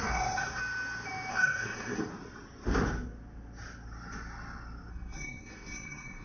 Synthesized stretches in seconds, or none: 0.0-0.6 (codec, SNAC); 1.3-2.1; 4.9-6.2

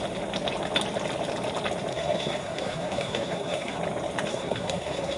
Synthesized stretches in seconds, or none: 1.9-3.8 (codec, SNAC); 4.3-5.2